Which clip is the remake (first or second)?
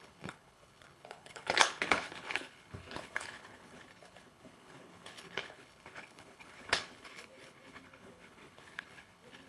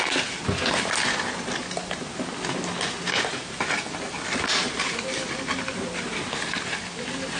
first